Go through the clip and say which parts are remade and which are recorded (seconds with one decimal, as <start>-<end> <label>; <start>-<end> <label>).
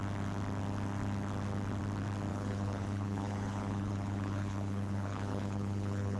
0.0-2.3 recorded; 2.3-6.2 remade